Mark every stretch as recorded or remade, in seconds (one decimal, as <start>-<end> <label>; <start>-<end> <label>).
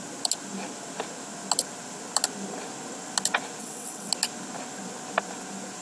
0.0-3.6 recorded; 3.6-4.1 remade; 4.1-5.8 recorded